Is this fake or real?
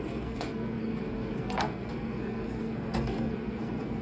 fake